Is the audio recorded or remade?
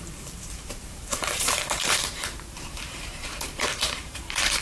remade